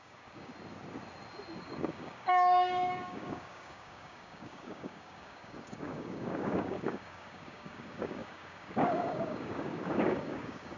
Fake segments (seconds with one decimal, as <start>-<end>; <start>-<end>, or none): 0.0-0.5; 1.6-10.8